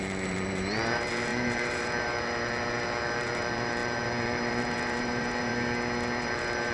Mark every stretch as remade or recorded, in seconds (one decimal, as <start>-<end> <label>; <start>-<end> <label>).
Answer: 0.0-5.5 remade; 5.5-6.2 recorded; 6.2-6.7 remade